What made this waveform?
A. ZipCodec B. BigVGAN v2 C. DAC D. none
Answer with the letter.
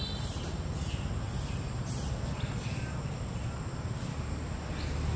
D